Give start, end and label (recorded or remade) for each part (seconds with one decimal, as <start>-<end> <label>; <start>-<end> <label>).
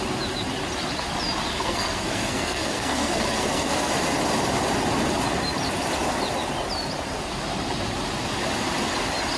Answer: 0.0-1.5 recorded; 1.5-3.9 remade; 3.9-9.4 recorded